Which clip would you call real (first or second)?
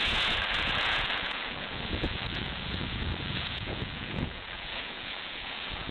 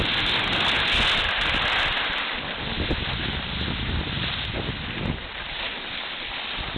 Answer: second